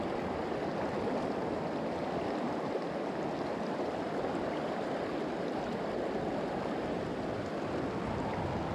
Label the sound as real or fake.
real